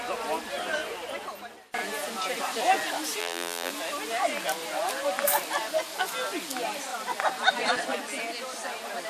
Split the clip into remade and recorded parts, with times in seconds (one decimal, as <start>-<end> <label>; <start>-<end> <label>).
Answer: 0.0-3.2 recorded; 3.2-3.7 remade; 3.7-9.1 recorded